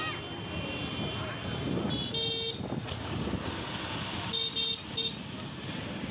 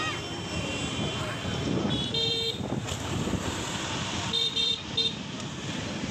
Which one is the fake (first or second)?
second